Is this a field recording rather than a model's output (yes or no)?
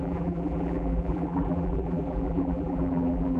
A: no